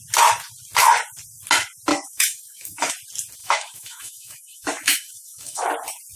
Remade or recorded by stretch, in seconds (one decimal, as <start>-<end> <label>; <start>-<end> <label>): 0.0-1.9 recorded; 1.9-2.9 remade; 2.9-3.4 recorded; 3.4-5.7 remade; 5.7-6.2 recorded